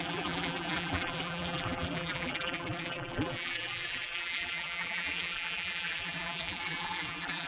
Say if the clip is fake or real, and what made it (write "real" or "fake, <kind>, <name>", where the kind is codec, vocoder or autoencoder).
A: fake, vocoder, BigVGAN v2